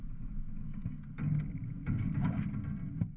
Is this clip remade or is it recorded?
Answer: recorded